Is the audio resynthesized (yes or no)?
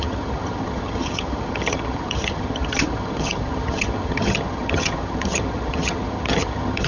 yes